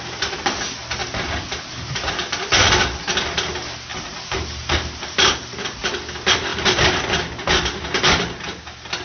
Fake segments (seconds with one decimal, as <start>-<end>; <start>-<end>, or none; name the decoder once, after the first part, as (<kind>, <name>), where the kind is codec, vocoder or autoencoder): 3.9-5.3 (vocoder, BigVGAN v2); 6.5-7.0